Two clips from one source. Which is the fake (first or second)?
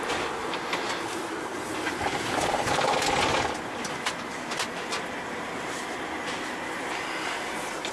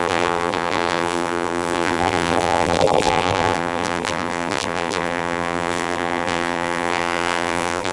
second